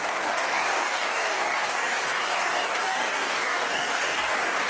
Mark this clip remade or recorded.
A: remade